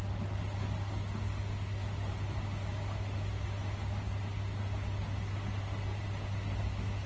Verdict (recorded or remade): recorded